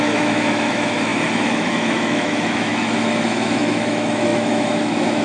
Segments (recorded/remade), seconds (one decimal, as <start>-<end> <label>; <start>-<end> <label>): 0.0-5.2 remade